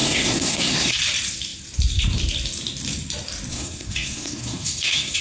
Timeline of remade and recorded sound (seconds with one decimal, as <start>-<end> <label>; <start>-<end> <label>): 0.0-1.0 remade; 1.0-3.5 recorded; 3.5-5.2 remade